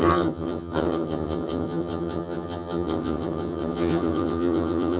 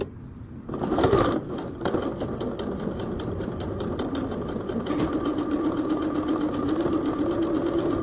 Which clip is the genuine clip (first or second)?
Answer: second